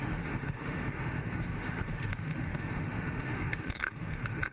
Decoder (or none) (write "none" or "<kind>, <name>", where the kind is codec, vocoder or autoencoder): autoencoder, DAC-VAE